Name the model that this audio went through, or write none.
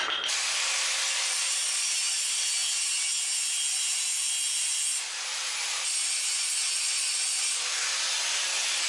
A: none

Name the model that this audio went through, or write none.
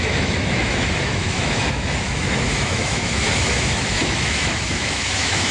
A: autoencoder, DAC-VAE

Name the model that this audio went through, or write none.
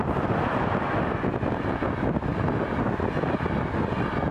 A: none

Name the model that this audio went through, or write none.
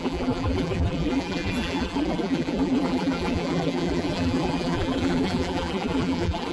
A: vocoder, BigVGAN v2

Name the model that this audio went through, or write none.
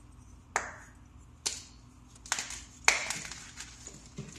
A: none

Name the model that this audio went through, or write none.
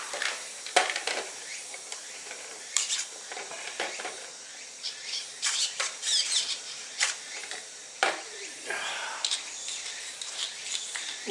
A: vocoder, BigVGAN v2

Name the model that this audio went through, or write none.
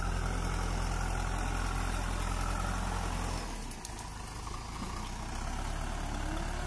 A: none